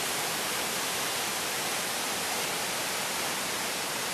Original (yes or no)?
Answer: yes